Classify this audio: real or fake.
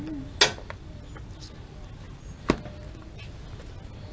real